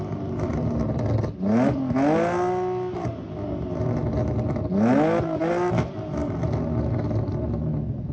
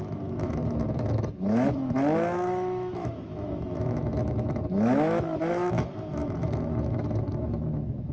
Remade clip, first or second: second